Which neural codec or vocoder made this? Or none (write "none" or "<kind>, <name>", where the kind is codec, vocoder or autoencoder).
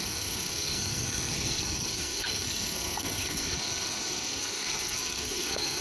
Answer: codec, SNAC